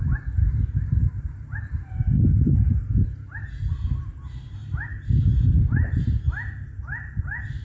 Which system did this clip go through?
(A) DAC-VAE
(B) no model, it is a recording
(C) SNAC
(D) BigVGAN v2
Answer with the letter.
B